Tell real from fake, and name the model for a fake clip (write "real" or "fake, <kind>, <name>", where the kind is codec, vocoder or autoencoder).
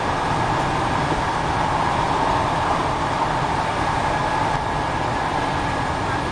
real